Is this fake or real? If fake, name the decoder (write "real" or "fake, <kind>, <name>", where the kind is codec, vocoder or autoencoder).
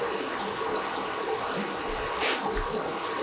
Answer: real